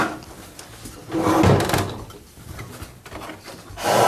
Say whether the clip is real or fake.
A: real